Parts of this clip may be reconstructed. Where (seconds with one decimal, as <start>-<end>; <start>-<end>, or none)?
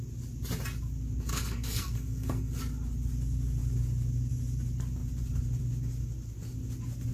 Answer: 1.3-2.5